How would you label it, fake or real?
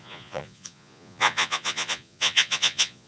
fake